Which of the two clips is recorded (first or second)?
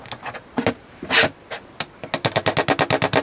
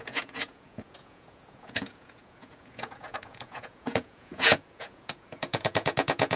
first